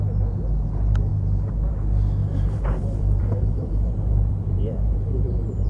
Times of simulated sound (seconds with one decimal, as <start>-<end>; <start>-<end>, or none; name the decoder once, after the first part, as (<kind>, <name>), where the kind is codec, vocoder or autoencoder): 2.2-5.7 (vocoder, BigVGAN v2)